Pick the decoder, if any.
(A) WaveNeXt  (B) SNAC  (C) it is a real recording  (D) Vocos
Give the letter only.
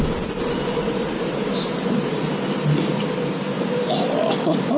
C